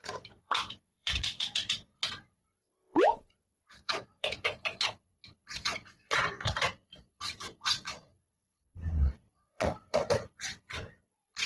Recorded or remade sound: remade